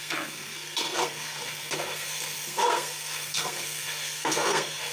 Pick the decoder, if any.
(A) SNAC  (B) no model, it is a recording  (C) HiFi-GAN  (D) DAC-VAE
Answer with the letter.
A